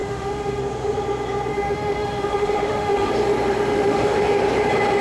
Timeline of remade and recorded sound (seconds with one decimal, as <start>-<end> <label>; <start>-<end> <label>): 0.0-0.6 remade; 0.6-1.5 recorded; 1.5-3.1 remade; 3.1-3.7 recorded; 3.7-4.4 remade; 4.4-5.0 recorded